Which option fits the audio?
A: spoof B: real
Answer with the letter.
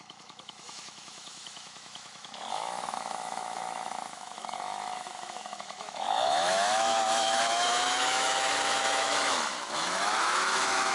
A